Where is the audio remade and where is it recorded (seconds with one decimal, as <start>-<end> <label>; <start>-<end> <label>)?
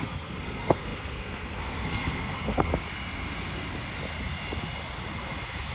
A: 0.0-2.7 remade; 2.7-5.7 recorded